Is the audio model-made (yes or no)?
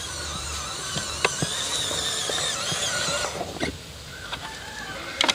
no